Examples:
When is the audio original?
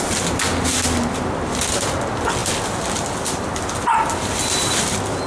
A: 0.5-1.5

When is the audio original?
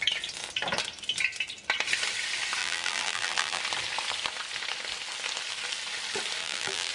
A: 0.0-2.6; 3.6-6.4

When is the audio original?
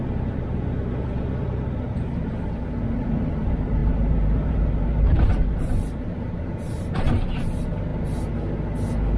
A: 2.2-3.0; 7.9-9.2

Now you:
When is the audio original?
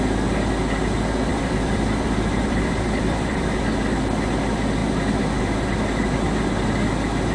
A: 0.0-1.3; 3.6-7.3